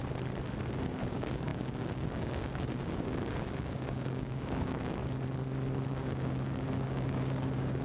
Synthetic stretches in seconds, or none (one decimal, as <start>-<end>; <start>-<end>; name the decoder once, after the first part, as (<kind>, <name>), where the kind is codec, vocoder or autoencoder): 0.7-5.0 (codec, DAC); 5.9-7.8